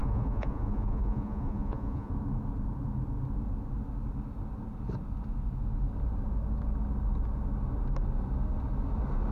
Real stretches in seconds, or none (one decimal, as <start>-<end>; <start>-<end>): 2.1-9.3